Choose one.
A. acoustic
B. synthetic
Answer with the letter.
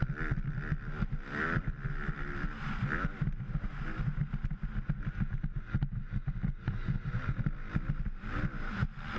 A